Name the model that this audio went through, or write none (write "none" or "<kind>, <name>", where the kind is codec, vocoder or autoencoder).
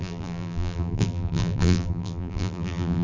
vocoder, BigVGAN v2